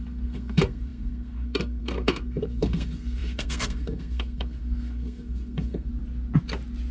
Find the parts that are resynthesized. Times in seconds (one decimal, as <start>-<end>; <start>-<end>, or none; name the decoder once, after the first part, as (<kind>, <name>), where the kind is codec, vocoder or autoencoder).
0.0-5.9 (codec, SNAC)